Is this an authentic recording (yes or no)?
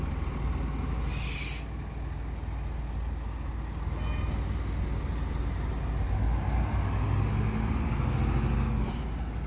yes